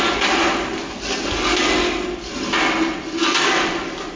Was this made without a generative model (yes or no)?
yes